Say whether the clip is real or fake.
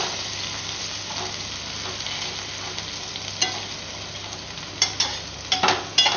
real